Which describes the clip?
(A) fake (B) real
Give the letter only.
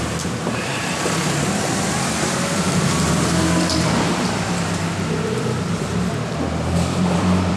A